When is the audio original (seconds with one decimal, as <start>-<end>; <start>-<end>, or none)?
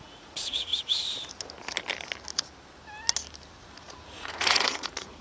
0.7-3.6